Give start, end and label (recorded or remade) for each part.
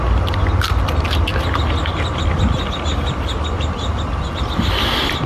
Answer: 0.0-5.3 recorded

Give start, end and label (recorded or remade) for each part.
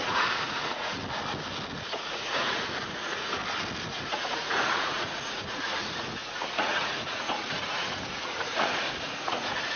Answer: 0.0-1.0 remade; 1.0-1.8 recorded; 1.8-3.4 remade; 3.4-3.9 recorded; 3.9-9.8 remade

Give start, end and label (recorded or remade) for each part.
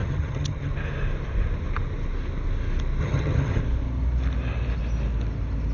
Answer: 0.0-0.7 remade; 0.7-3.0 recorded; 3.0-3.6 remade; 3.6-5.7 recorded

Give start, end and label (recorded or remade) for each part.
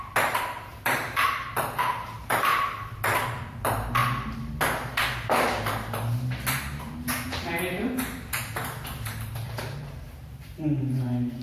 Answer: 0.0-2.5 remade; 2.5-3.6 recorded; 3.6-4.0 remade; 4.0-9.2 recorded; 9.2-11.4 remade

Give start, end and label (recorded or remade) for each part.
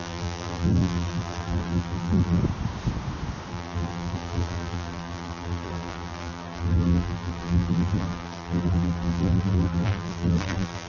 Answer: 0.0-2.4 remade; 2.4-3.5 recorded; 3.5-10.9 remade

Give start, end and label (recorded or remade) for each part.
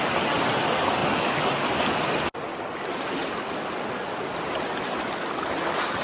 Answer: 0.0-6.0 recorded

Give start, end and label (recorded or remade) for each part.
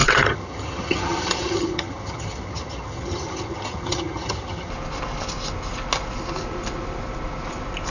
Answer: 0.0-4.7 remade; 4.7-7.9 recorded